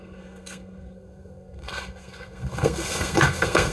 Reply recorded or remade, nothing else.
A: remade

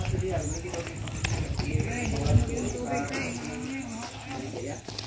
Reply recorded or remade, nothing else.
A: recorded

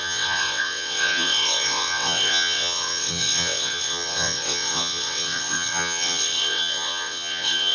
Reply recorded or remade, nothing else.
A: remade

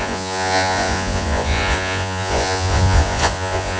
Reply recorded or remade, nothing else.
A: remade